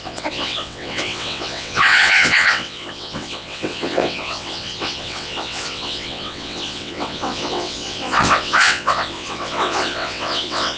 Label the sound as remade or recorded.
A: remade